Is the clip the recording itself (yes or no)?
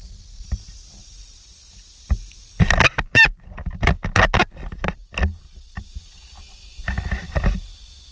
yes